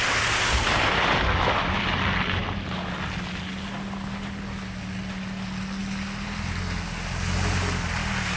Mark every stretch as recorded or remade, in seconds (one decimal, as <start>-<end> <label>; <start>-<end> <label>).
0.0-8.4 recorded